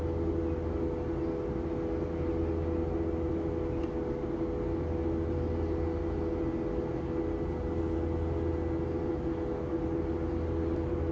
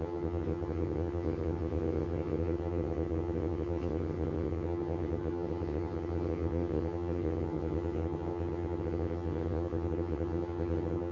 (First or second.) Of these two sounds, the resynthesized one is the second